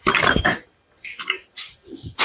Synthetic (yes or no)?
no